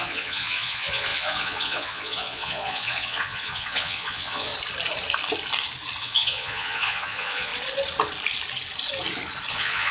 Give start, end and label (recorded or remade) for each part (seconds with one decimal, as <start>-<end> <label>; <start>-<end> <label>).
0.0-4.5 remade; 4.5-6.0 recorded; 6.0-7.5 remade; 7.5-9.5 recorded; 9.5-9.9 remade